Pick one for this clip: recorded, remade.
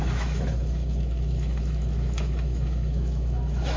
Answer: remade